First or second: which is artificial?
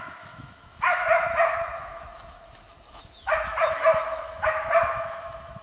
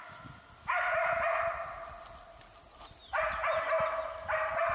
first